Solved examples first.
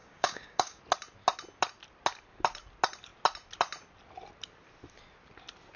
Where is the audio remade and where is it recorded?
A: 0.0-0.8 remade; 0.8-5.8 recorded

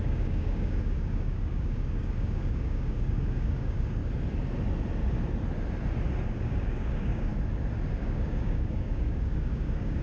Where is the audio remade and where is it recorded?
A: 0.0-4.0 remade; 4.0-6.3 recorded; 6.3-7.3 remade; 7.3-8.0 recorded; 8.0-10.0 remade